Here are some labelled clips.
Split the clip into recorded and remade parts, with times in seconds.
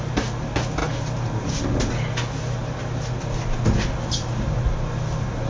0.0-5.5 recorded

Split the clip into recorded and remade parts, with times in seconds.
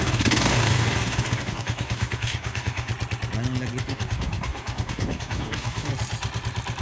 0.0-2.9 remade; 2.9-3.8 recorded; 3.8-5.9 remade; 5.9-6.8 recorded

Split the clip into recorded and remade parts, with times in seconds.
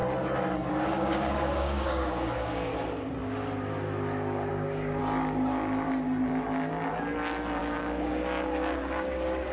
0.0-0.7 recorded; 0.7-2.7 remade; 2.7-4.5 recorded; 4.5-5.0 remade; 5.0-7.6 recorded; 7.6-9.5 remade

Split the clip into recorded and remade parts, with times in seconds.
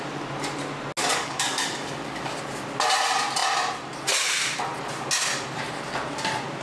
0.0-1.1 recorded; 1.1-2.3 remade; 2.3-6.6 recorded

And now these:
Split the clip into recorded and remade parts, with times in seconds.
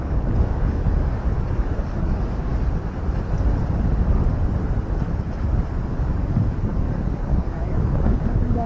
0.0-2.5 remade; 2.5-5.9 recorded; 5.9-8.7 remade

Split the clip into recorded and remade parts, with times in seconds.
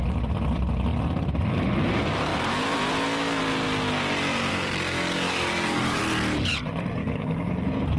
0.0-4.5 recorded; 4.5-6.0 remade; 6.0-7.0 recorded; 7.0-7.5 remade; 7.5-8.0 recorded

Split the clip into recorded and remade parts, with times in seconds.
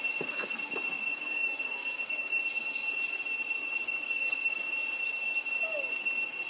0.0-1.1 recorded; 1.1-2.4 remade; 2.4-3.8 recorded; 3.8-4.7 remade; 4.7-6.5 recorded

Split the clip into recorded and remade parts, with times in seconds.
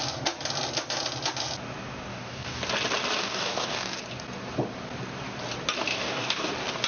0.0-2.1 recorded; 2.1-2.6 remade; 2.6-3.2 recorded; 3.2-4.0 remade; 4.0-5.9 recorded; 5.9-6.5 remade; 6.5-6.9 recorded